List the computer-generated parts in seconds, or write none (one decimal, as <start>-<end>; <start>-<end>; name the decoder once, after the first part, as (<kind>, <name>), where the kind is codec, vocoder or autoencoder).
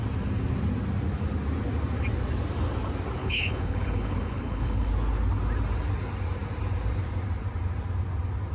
3.2-4.9 (codec, HILCodec)